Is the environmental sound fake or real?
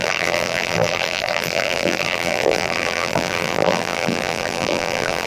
fake